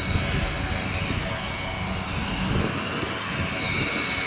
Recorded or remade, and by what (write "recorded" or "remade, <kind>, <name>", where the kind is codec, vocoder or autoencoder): recorded